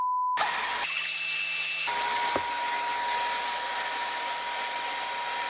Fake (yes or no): no